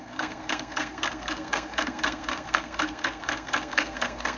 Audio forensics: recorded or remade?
remade